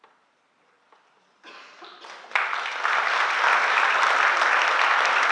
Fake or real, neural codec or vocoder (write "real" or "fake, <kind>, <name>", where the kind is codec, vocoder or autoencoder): real